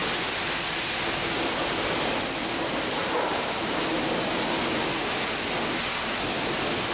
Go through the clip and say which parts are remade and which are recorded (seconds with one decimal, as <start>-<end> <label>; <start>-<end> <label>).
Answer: 0.0-3.0 recorded; 3.0-3.9 remade; 3.9-6.9 recorded